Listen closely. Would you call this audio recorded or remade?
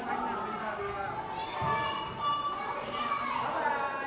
recorded